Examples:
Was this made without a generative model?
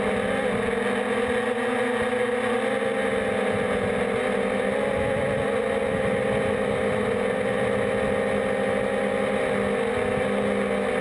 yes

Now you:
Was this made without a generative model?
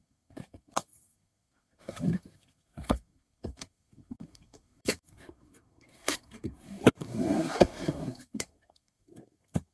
no